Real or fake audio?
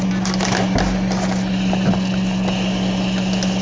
real